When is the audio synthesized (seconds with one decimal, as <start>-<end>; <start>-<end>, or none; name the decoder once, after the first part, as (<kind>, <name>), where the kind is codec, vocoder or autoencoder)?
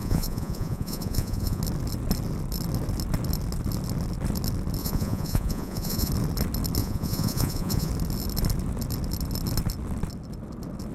0.0-1.6 (vocoder, Vocos); 4.8-6.1; 6.8-7.9